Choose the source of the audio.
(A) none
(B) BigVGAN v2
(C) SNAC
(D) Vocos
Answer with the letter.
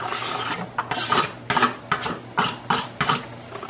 A